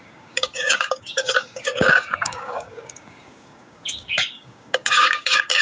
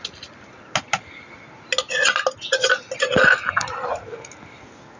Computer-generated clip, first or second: first